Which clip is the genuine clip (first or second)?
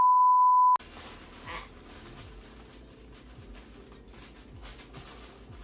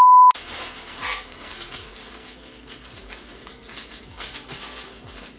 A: first